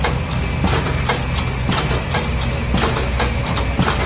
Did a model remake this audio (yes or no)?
no